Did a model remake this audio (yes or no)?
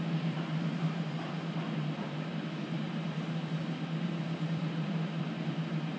yes